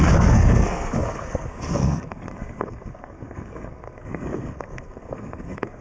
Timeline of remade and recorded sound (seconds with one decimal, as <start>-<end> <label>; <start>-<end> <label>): 0.0-5.8 remade